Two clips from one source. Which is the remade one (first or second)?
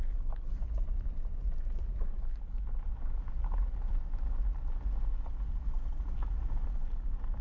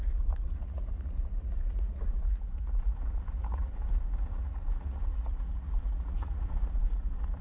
second